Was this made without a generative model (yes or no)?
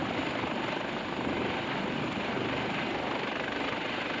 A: yes